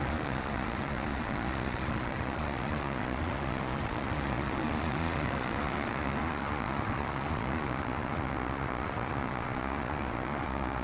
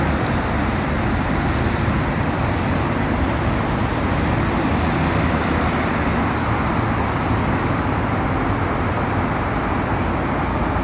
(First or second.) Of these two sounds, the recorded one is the second